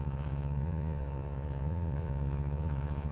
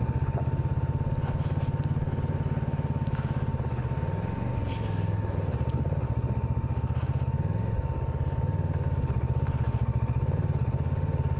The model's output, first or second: first